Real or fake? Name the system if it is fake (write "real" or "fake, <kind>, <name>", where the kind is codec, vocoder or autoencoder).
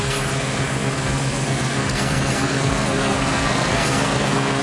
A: fake, codec, SNAC